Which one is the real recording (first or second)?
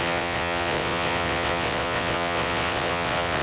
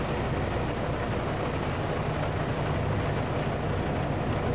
second